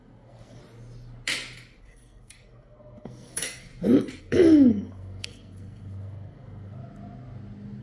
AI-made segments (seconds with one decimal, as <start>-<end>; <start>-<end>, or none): 0.0-0.6; 1.8-3.7; 4.2-6.8